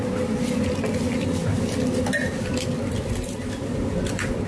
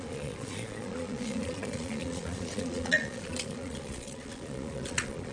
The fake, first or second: second